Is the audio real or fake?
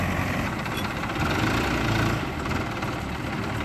fake